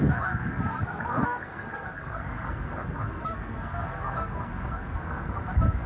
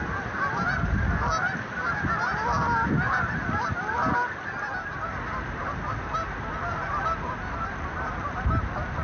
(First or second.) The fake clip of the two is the first